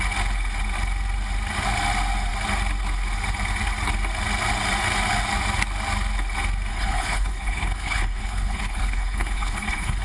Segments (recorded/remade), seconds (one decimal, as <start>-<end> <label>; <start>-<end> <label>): 0.0-6.7 recorded; 6.7-10.0 remade